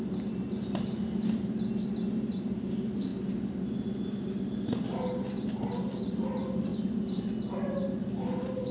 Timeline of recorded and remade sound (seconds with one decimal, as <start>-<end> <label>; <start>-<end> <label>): 0.0-8.7 recorded